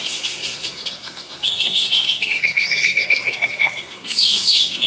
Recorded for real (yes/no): no